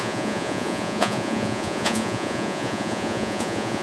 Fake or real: fake